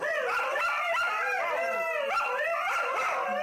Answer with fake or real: real